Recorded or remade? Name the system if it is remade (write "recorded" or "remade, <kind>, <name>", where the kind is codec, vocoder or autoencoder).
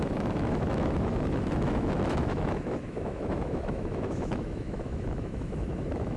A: remade, autoencoder, DAC-VAE